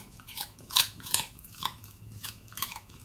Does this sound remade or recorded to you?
remade